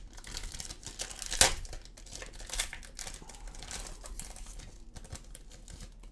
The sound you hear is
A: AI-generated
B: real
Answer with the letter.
B